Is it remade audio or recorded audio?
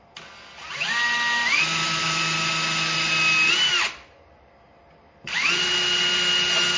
recorded